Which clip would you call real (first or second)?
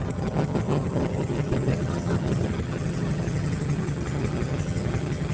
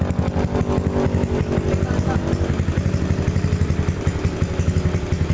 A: second